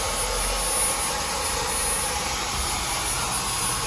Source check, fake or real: real